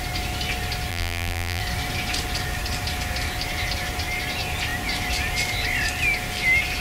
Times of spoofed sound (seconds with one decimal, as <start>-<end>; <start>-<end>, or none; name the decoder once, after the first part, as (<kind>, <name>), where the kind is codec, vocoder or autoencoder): 0.9-1.6 (vocoder, BigVGAN v2)